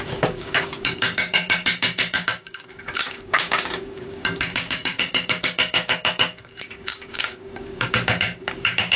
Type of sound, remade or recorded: remade